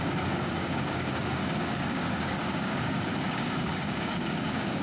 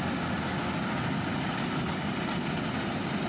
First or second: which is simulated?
first